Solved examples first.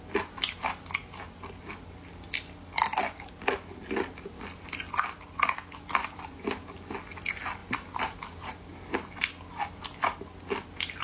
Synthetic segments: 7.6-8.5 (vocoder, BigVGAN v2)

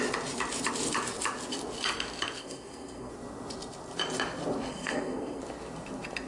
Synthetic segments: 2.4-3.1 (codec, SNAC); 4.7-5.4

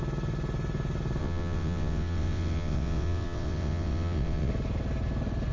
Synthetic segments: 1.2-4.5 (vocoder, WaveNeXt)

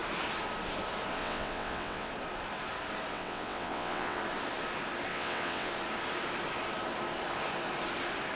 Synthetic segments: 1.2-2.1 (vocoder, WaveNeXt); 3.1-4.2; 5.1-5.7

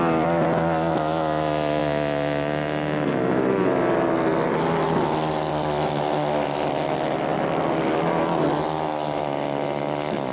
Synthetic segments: none

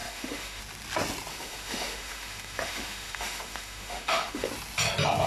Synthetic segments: 0.0-0.6 (autoencoder, DAC-VAE); 1.3-4.5

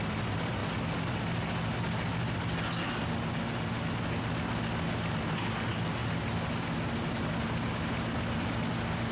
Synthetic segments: none